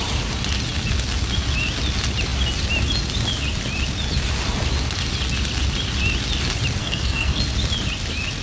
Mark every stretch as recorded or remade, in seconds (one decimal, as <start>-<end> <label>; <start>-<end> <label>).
0.0-6.8 recorded; 6.8-7.4 remade; 7.4-8.4 recorded